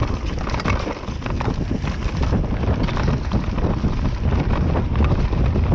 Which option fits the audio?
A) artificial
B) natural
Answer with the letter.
B